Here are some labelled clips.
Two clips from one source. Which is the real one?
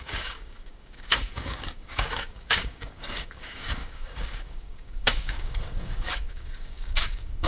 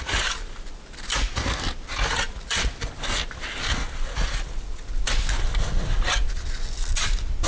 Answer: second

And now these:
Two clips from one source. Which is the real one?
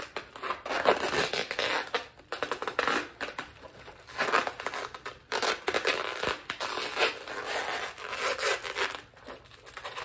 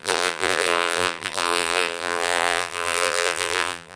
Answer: first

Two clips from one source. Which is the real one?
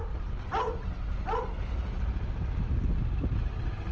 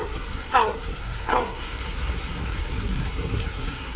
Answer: first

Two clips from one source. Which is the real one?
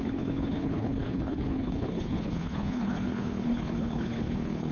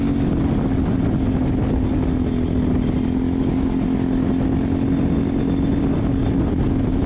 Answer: second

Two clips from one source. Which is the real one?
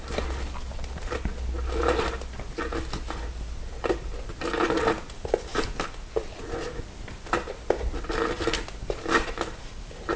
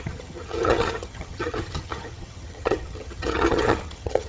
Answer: first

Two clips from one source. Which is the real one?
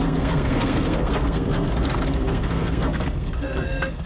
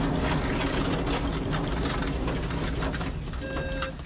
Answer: second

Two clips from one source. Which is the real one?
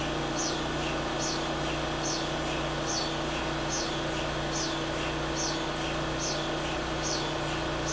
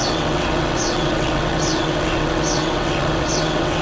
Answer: first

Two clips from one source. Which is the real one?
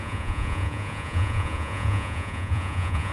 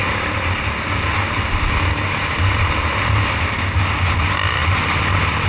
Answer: second